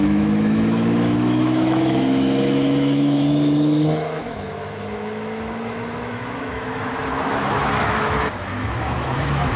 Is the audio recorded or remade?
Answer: remade